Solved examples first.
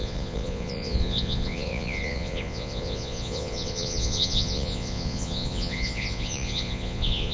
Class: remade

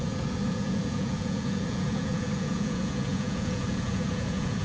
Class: remade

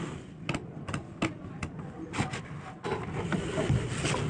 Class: recorded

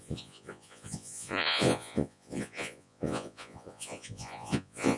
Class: remade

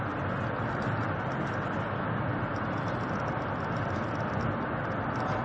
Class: recorded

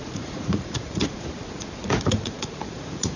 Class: remade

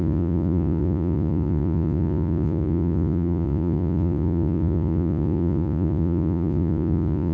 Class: remade